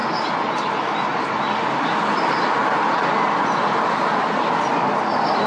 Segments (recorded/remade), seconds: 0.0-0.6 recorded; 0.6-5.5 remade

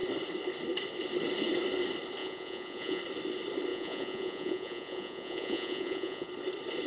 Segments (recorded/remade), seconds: 0.0-2.2 recorded; 2.2-3.0 remade; 3.0-3.7 recorded; 3.7-6.3 remade; 6.3-6.9 recorded

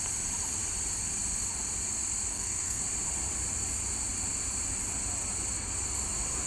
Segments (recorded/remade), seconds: 0.0-2.3 recorded; 2.3-2.8 remade; 2.8-6.5 recorded

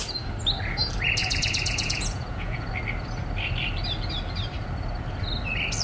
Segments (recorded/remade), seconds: 0.0-1.2 recorded; 1.2-2.7 remade; 2.7-5.8 recorded